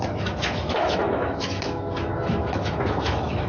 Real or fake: fake